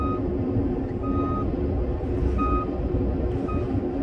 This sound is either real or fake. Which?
real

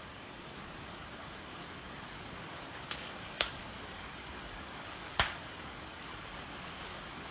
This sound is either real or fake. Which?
fake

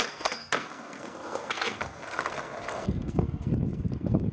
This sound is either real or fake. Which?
fake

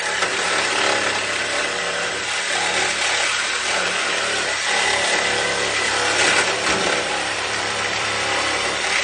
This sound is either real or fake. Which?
fake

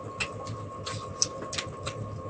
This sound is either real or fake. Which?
real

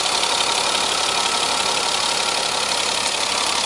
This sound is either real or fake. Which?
real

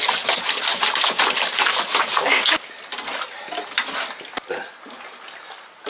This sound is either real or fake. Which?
real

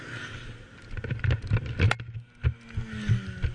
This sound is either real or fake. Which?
real